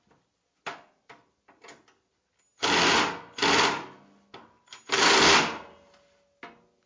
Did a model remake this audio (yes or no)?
no